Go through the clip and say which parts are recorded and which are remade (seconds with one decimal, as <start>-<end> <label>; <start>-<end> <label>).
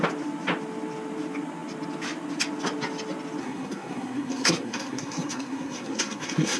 0.0-3.4 recorded; 3.4-6.6 remade